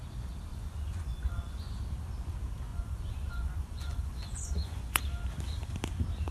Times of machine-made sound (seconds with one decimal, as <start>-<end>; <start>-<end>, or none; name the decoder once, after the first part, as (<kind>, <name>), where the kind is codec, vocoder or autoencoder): 0.5-1.7 (vocoder, Vocos); 2.7-5.0